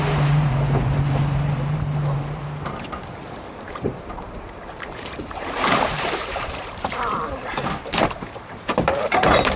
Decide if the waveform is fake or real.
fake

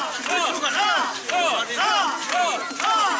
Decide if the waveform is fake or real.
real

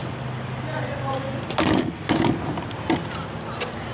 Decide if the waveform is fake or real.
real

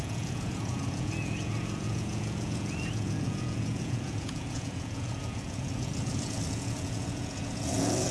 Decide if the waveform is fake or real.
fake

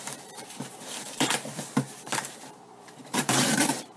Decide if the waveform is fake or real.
fake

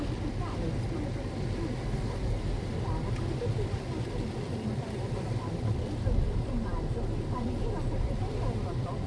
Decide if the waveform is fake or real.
real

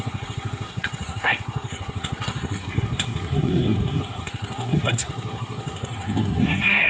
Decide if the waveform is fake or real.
fake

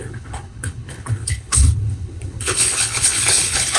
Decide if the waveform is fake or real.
fake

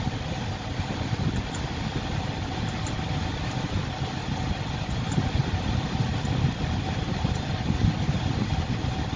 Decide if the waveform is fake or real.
real